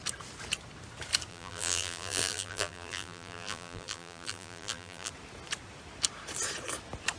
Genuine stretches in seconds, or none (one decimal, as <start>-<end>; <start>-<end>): 0.0-1.3; 5.1-7.2